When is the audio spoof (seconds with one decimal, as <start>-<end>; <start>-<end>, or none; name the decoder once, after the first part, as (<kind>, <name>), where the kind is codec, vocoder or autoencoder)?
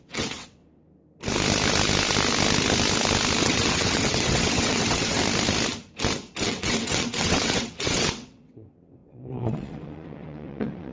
0.0-0.6 (vocoder, WaveNeXt); 3.4-5.2; 6.4-10.9